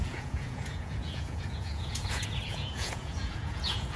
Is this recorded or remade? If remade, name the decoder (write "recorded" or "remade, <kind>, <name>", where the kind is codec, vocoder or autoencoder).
remade, vocoder, Vocos